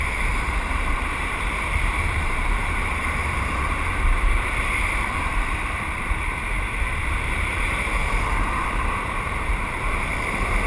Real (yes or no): no